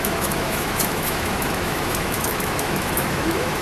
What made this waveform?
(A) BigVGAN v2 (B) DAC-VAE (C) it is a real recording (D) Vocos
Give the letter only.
B